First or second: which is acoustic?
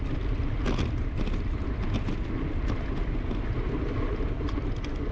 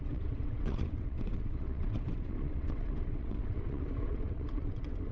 first